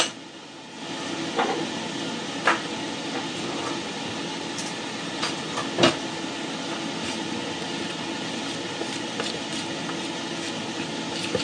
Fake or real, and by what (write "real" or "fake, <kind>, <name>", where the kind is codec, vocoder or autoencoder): fake, vocoder, BigVGAN v2